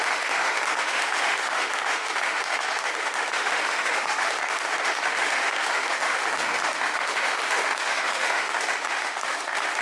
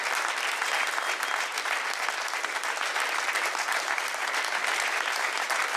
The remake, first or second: first